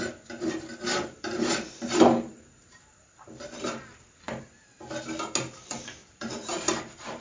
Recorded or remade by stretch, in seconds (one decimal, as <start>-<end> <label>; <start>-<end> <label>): 0.0-0.9 recorded; 0.9-4.4 remade; 4.4-6.0 recorded; 6.0-7.2 remade